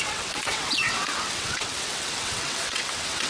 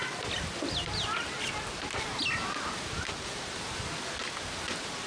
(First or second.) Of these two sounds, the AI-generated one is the first